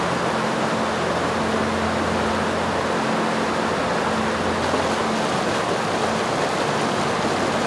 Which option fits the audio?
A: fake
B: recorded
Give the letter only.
B